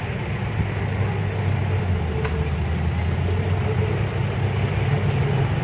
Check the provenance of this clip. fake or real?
real